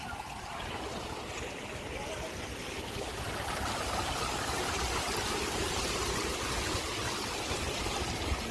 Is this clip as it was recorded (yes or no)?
yes